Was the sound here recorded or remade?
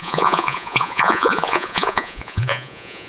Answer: remade